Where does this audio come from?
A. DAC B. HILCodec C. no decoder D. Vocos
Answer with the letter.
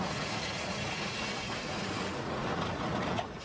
D